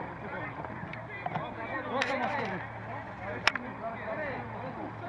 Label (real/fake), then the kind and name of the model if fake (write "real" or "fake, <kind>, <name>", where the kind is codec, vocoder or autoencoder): real